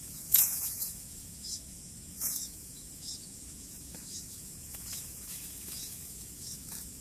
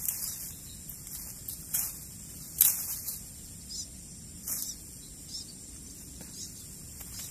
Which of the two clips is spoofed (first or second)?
first